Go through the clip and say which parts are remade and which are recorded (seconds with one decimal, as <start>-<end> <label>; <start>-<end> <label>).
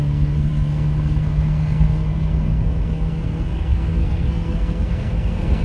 0.0-5.6 remade